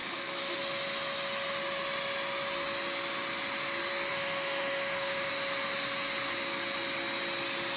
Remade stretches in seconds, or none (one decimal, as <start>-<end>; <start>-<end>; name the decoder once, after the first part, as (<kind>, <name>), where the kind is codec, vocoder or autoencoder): 0.0-0.6 (autoencoder, DAC-VAE); 4.1-5.3